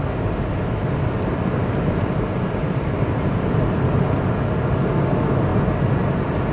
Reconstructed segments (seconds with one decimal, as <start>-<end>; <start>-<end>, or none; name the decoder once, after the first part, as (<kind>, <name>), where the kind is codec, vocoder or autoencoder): 1.6-3.5 (vocoder, BigVGAN v2)